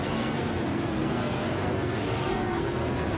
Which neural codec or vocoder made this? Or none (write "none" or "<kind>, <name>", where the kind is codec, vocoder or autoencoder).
codec, SNAC